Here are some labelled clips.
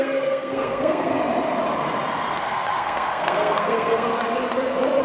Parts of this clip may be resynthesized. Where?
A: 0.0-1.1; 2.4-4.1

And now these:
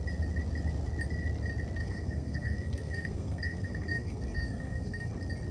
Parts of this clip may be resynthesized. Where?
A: 1.8-5.1

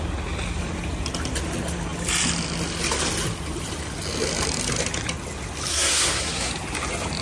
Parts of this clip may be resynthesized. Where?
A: 5.7-6.5

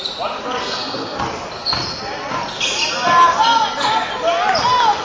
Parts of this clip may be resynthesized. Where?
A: 0.6-1.2

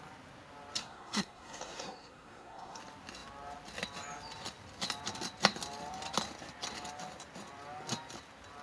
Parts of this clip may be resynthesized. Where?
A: 0.8-2.8

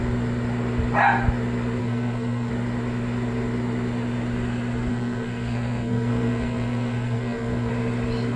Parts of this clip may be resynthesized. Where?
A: 1.8-2.5; 4.9-7.7